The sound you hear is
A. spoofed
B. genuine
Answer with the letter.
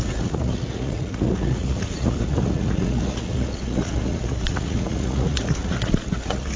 A